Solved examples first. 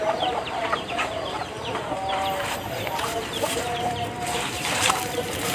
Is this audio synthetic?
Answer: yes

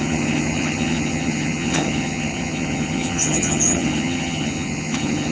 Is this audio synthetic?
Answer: yes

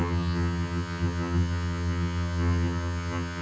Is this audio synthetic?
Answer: yes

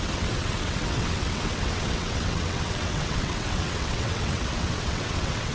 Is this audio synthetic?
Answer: yes